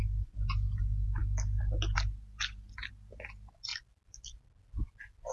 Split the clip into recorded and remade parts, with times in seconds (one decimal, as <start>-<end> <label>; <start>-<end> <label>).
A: 0.0-5.3 recorded